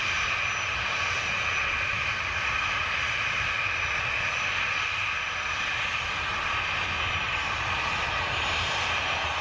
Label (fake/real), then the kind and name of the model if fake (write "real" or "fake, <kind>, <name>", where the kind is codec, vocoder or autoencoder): real